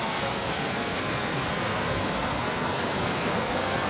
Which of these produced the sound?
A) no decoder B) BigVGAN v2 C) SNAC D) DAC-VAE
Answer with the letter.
C